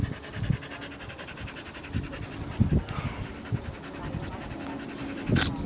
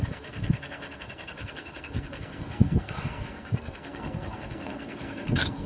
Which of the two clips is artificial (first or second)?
second